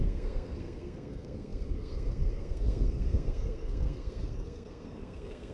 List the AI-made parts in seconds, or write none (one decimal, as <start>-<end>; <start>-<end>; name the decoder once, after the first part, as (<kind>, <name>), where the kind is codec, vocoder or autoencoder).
0.0-5.5 (codec, SNAC)